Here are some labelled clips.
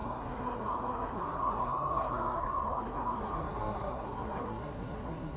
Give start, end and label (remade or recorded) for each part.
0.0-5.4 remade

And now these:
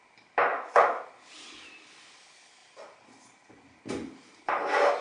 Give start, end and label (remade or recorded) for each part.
0.0-0.5 recorded; 0.5-1.0 remade; 1.0-5.0 recorded

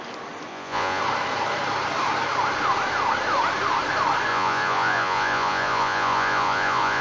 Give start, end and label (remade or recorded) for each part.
0.0-0.5 recorded; 0.5-1.0 remade; 1.0-4.3 recorded; 4.3-7.0 remade

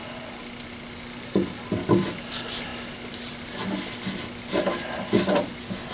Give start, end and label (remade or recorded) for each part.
0.0-5.9 recorded

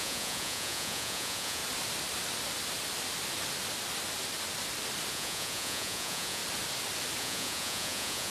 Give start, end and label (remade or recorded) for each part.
0.0-1.6 remade; 1.6-5.1 recorded; 5.1-6.4 remade; 6.4-7.2 recorded; 7.2-8.3 remade